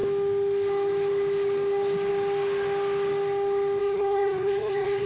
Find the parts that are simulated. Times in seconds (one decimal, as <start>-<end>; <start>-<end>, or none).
3.8-5.1